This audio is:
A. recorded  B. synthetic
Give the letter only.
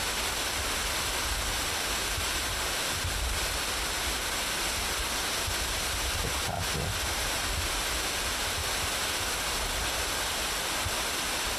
A